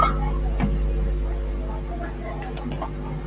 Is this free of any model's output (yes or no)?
yes